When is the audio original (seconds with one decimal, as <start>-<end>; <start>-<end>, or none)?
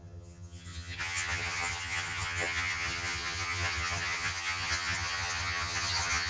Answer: none